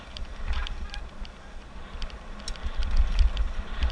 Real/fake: real